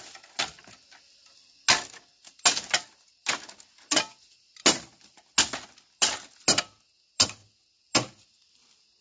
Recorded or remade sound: recorded